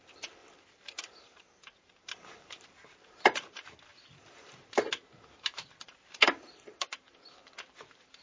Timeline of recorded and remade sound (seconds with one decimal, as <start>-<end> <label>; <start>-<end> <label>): 0.0-8.2 remade